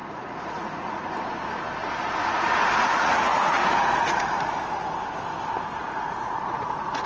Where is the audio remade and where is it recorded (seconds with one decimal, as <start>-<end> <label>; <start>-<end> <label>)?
0.0-1.0 remade; 1.0-1.8 recorded; 1.8-4.5 remade; 4.5-5.7 recorded; 5.7-7.1 remade